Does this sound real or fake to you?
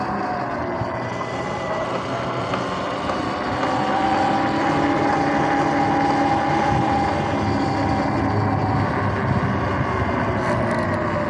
real